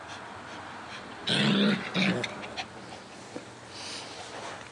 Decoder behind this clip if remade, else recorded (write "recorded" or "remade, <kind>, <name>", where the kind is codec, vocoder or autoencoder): recorded